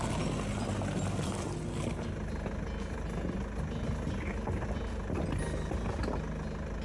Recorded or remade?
recorded